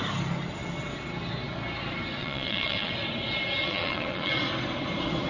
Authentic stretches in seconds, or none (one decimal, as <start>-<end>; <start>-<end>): 0.0-2.2; 2.9-3.6; 4.4-5.3